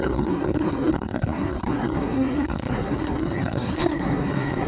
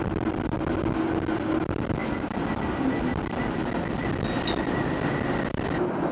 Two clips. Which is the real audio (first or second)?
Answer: second